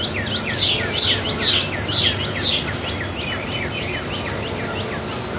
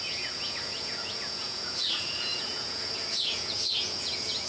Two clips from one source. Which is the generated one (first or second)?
second